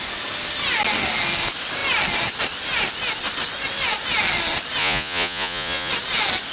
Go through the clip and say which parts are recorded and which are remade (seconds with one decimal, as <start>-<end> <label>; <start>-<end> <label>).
0.0-4.8 recorded; 4.8-5.9 remade; 5.9-6.5 recorded